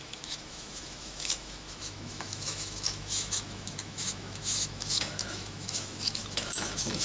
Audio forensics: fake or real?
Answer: fake